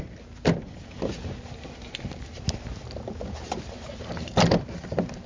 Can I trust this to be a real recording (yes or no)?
yes